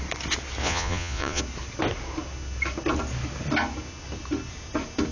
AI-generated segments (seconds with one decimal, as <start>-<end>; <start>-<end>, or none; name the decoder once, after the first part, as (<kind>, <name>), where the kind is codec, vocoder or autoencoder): 0.6-1.4 (vocoder, Vocos)